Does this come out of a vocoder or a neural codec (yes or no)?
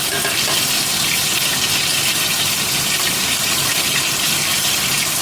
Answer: no